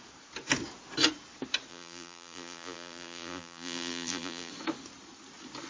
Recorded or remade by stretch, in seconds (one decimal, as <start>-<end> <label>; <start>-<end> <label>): 0.0-1.7 recorded; 1.7-4.5 remade; 4.5-5.7 recorded